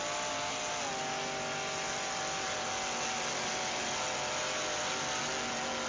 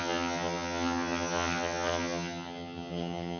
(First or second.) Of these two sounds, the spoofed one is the second